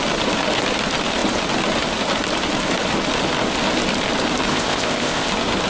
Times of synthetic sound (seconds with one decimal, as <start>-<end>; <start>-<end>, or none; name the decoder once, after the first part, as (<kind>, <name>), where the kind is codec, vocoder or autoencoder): 4.5-5.3 (codec, ZipCodec)